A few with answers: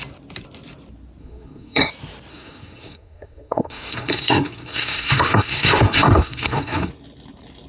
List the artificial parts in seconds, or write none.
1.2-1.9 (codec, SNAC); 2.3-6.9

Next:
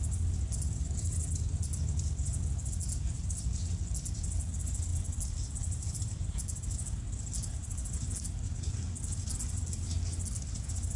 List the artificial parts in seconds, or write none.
none

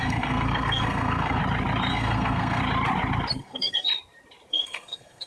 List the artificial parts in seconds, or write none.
0.0-1.4 (codec, SNAC); 1.9-2.6; 3.4-3.9; 4.5-5.3